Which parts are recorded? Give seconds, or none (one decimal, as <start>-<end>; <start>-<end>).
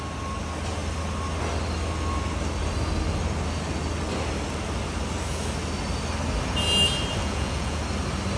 0.0-7.2; 7.8-8.4